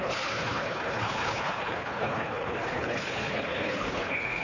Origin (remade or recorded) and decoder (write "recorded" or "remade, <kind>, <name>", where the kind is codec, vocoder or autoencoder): remade, codec, HILCodec